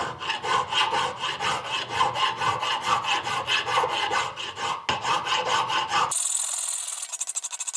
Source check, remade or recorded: recorded